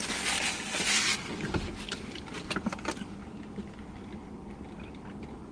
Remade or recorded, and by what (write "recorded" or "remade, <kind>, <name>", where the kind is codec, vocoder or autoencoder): recorded